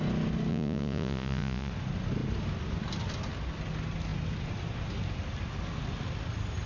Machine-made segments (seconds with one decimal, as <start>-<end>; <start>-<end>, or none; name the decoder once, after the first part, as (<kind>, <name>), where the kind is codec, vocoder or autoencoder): 0.5-1.7 (vocoder, Vocos)